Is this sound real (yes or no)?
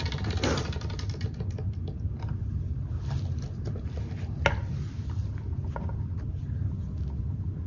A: yes